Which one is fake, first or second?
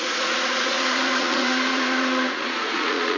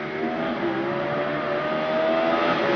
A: first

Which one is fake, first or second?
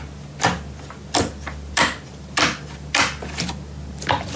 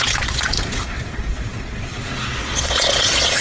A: second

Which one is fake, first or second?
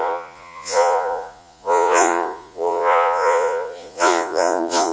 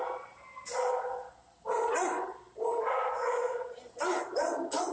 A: first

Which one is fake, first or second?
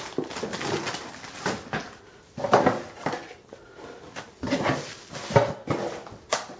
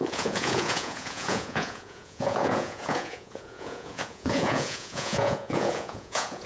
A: second